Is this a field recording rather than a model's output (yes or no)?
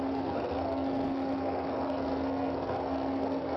no